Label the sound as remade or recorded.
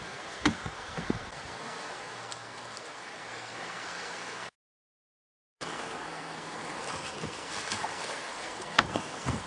remade